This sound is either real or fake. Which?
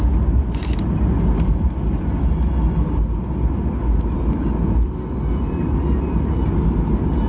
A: real